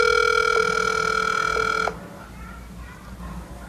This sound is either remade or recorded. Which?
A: recorded